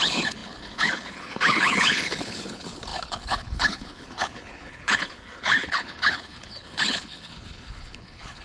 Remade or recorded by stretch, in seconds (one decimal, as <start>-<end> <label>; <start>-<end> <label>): 0.0-8.4 remade